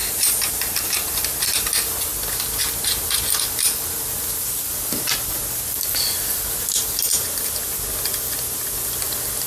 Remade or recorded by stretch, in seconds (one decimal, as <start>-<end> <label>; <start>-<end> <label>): 0.0-9.5 recorded